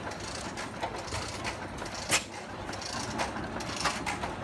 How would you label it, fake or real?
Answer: real